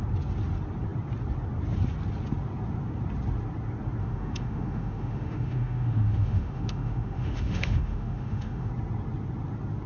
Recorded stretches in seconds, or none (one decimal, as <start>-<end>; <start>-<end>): 0.0-4.0; 8.7-9.9